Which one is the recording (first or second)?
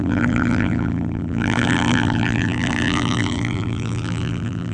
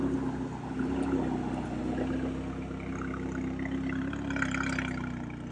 second